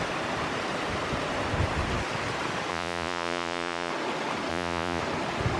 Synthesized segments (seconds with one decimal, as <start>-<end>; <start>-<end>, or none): 2.7-3.9; 4.5-5.0